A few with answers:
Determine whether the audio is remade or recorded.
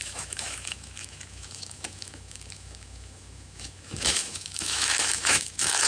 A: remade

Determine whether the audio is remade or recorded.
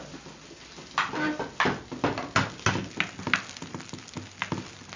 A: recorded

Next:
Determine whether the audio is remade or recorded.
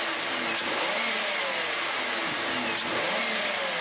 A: recorded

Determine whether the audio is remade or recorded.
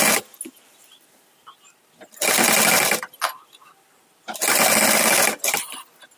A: recorded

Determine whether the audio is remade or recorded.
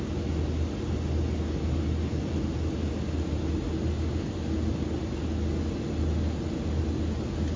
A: recorded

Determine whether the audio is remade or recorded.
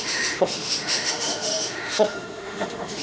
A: remade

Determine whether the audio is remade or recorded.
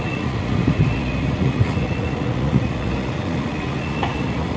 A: remade